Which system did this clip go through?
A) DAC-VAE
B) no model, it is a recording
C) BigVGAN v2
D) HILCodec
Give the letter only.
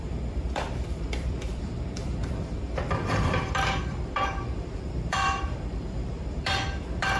C